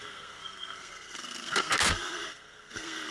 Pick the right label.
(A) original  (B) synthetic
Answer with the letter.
B